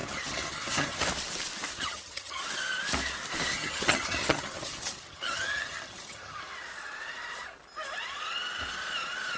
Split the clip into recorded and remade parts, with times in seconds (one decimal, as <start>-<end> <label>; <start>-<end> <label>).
0.0-1.0 remade; 1.0-1.7 recorded; 1.7-2.4 remade; 2.4-3.5 recorded; 3.5-6.4 remade; 6.4-9.4 recorded

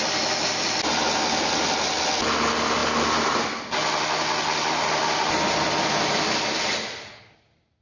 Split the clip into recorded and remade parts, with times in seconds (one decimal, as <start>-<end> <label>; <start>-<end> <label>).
0.0-7.8 recorded

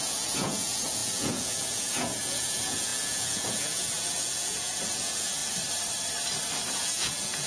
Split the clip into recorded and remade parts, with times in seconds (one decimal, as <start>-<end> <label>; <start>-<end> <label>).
0.0-5.4 remade; 5.4-6.7 recorded; 6.7-7.5 remade

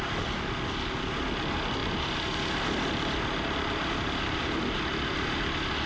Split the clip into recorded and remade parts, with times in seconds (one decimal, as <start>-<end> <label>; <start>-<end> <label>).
0.0-1.8 recorded; 1.8-5.3 remade; 5.3-5.9 recorded

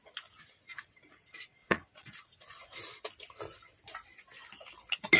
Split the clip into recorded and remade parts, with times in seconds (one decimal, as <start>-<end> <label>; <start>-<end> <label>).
0.0-0.7 recorded; 0.7-2.6 remade; 2.6-5.2 recorded

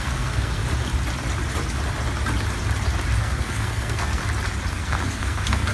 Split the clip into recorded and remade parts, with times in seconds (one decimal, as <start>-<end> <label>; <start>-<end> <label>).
0.0-0.6 remade; 0.6-3.2 recorded; 3.2-4.2 remade; 4.2-4.7 recorded; 4.7-5.7 remade

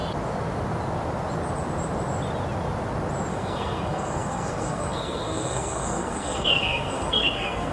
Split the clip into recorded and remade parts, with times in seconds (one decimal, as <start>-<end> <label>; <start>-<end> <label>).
0.0-3.3 recorded; 3.3-7.7 remade

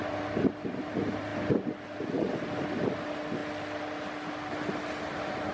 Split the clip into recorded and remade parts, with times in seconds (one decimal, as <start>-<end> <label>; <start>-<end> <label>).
0.0-5.5 recorded